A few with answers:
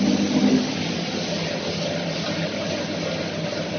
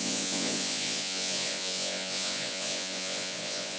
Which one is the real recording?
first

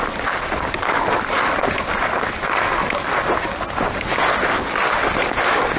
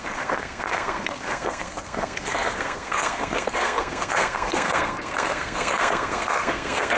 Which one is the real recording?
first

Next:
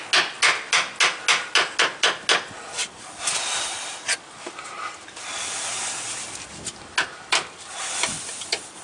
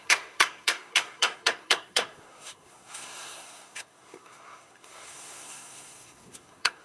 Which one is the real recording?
first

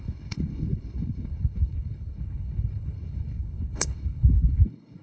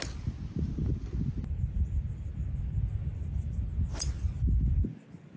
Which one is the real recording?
second